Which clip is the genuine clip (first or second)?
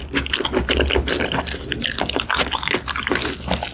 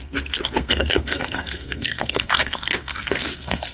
first